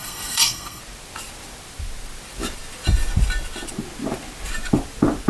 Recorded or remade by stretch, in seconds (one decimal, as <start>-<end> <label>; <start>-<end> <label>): 0.0-0.8 remade; 0.8-5.3 recorded